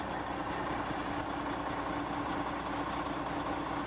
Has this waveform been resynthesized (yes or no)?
no